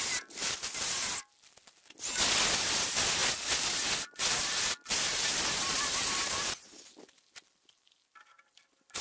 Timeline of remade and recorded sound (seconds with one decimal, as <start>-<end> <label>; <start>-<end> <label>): 0.0-9.0 recorded